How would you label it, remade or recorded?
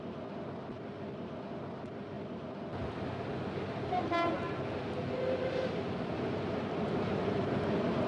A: recorded